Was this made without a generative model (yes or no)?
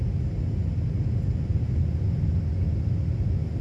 yes